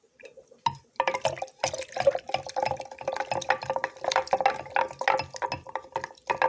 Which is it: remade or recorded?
recorded